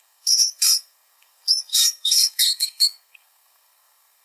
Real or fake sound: fake